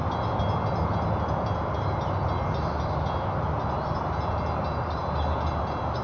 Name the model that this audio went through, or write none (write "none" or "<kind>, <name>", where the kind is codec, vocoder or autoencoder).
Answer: none